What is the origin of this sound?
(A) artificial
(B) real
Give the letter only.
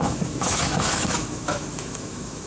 A